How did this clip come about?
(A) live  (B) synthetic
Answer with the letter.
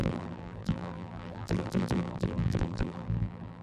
B